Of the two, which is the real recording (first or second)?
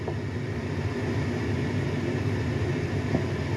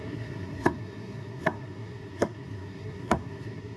first